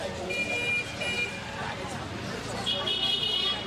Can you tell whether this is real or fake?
real